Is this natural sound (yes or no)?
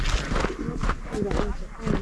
yes